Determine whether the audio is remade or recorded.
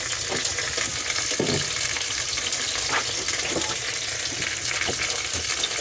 recorded